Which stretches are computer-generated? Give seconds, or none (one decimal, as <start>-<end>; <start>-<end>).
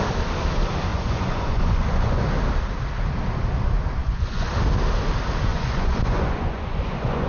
0.9-2.3; 4.0-4.5; 5.5-7.3